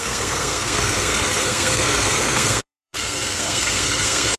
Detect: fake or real fake